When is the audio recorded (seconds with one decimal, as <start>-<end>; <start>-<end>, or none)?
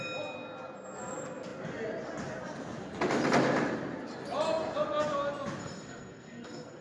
0.0-5.6